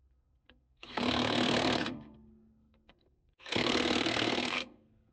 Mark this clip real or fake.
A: fake